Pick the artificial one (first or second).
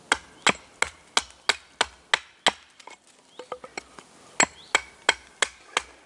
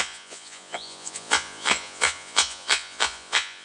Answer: second